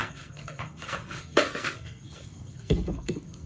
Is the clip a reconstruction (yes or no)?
yes